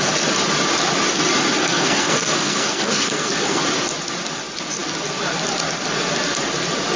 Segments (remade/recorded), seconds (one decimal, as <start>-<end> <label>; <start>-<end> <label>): 0.0-1.6 recorded; 1.6-3.6 remade; 3.6-7.0 recorded